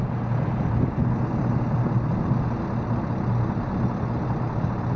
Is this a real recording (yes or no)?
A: yes